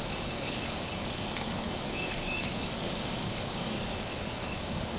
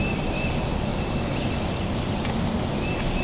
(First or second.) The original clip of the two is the second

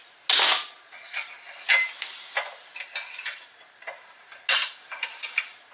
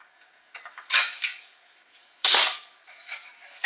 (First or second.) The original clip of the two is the first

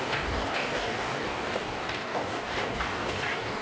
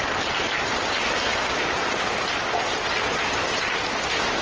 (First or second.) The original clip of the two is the second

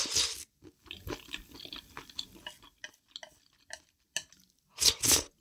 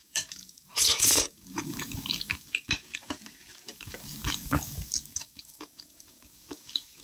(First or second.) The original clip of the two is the first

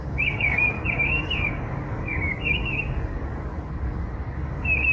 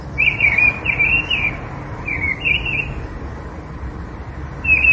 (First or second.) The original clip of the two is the second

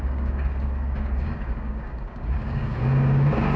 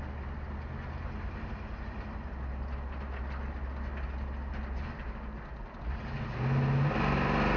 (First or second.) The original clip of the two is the second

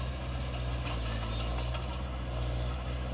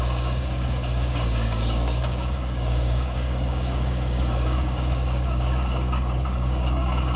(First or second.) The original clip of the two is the first